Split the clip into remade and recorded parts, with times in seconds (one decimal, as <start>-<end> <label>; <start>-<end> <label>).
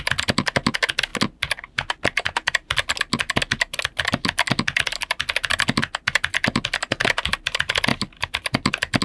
0.0-7.9 recorded; 7.9-9.0 remade